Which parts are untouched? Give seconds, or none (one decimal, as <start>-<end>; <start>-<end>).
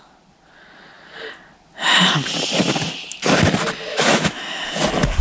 0.0-3.9; 4.6-5.2